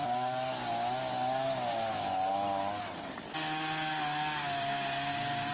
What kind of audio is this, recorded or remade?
recorded